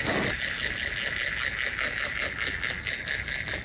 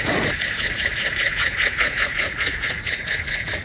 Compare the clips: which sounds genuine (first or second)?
first